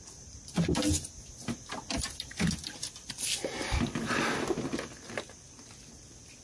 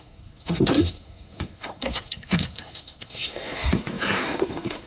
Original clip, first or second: first